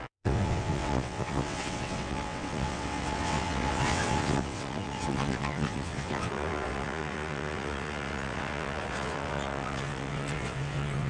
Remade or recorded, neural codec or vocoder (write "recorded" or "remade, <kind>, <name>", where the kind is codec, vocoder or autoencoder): remade, vocoder, WaveNeXt